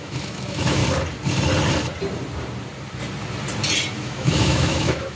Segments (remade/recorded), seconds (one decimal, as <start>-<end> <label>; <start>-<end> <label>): 0.0-0.8 remade; 0.8-3.9 recorded; 3.9-5.2 remade